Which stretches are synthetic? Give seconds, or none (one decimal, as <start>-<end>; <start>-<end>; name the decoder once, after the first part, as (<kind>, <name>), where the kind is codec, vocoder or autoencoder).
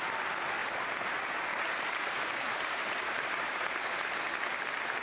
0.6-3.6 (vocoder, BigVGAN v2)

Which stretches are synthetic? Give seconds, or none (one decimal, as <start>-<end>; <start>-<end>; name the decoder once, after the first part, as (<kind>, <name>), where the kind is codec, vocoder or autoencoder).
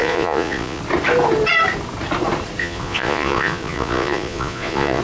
0.0-0.8 (vocoder, Vocos); 2.6-5.0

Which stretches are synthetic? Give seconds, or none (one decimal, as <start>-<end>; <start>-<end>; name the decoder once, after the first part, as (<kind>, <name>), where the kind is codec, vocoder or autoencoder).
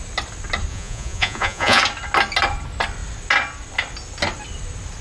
0.7-1.8 (vocoder, Vocos)